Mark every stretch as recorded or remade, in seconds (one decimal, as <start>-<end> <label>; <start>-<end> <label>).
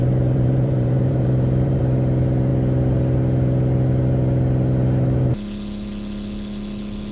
0.0-1.8 remade; 1.8-7.1 recorded